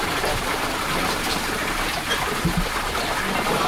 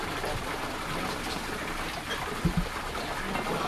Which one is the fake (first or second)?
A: first